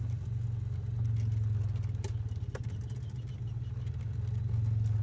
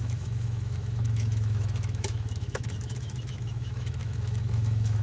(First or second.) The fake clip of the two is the second